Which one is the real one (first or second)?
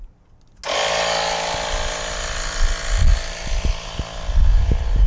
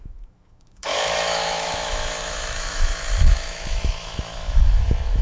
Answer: first